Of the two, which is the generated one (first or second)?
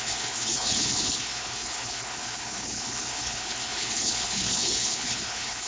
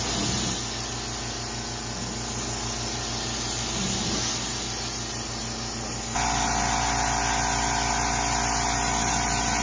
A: first